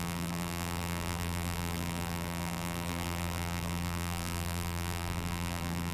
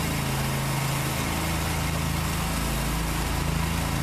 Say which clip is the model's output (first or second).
first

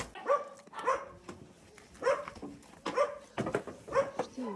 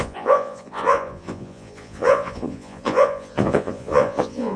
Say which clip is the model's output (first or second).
second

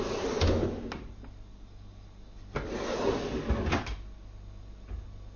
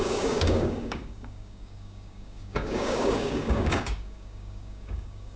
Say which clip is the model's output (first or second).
second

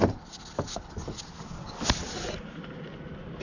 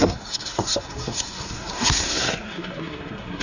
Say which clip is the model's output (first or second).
second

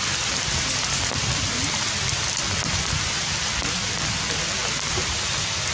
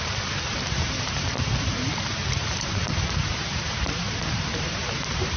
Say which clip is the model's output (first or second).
second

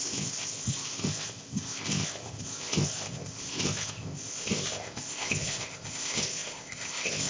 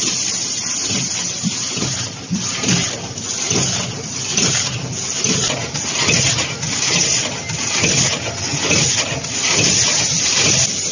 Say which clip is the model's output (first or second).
first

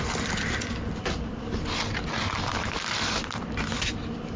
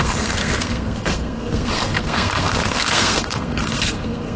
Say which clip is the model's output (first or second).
second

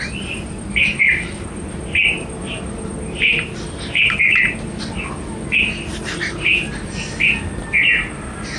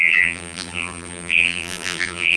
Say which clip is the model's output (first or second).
second